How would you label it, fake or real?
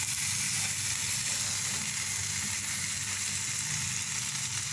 real